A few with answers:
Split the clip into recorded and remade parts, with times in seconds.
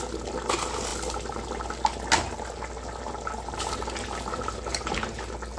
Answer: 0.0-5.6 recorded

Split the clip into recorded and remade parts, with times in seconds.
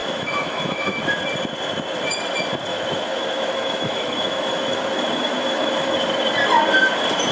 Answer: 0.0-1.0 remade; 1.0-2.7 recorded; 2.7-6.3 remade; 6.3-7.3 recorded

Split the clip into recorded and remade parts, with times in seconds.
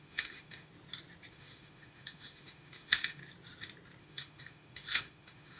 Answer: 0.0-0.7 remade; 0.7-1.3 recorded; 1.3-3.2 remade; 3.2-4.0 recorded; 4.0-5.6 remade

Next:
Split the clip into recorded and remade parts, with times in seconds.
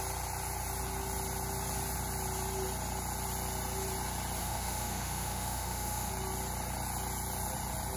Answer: 0.0-4.4 recorded; 4.4-6.1 remade; 6.1-8.0 recorded